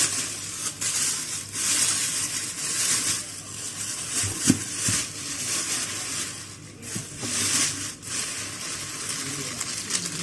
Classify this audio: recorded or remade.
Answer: recorded